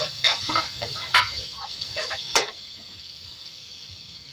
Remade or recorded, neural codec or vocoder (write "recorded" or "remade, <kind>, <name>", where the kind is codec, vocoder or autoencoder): remade, codec, SNAC